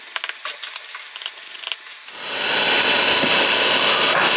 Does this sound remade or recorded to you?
recorded